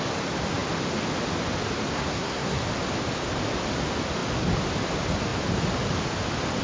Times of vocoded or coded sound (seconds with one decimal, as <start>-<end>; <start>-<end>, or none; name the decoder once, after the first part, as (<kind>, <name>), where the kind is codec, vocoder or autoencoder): 1.9-2.6 (codec, SNAC)

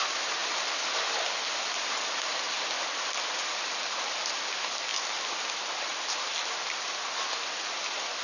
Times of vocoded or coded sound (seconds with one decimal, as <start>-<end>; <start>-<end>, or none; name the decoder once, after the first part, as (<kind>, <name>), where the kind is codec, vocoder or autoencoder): none